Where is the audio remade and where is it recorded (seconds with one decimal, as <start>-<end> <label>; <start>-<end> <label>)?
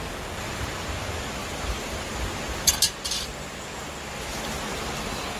0.0-1.4 recorded; 1.4-2.7 remade; 2.7-5.4 recorded